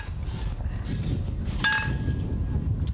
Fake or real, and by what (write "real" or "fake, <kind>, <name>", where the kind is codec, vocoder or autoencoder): real